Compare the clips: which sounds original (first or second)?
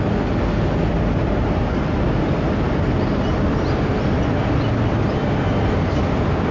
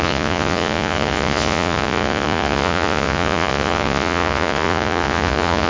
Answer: first